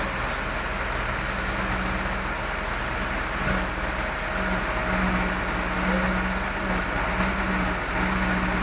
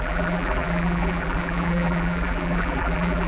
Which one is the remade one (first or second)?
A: second